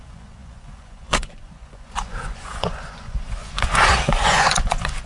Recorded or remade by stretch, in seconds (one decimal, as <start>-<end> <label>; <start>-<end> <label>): 0.0-5.1 remade